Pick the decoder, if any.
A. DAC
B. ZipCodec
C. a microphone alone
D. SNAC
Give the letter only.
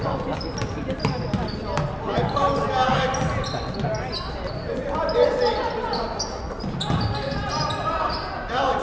C